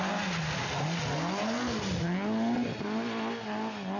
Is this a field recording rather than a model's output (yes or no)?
yes